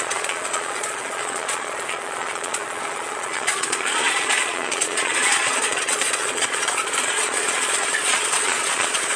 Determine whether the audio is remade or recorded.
remade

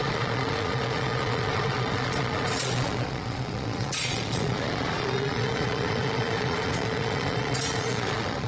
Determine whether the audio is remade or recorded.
remade